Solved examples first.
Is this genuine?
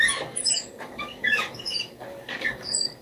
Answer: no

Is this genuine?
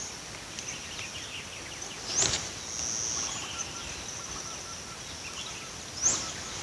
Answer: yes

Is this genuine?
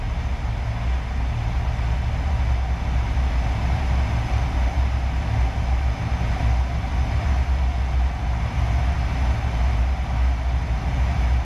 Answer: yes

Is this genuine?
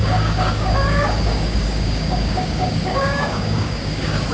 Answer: no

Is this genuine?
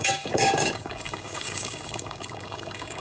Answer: no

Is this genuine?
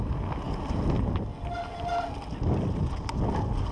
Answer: yes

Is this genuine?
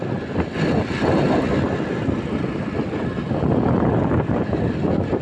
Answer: yes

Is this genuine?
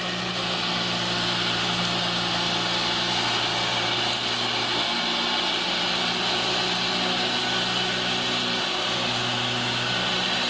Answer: yes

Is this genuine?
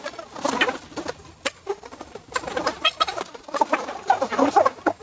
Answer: yes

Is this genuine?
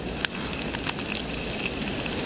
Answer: yes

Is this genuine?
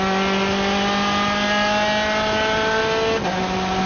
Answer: yes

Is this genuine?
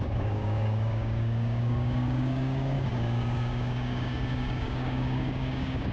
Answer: no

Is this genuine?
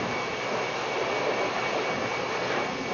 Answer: yes